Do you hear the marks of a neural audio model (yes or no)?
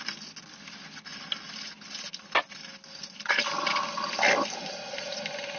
no